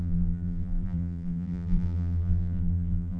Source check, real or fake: fake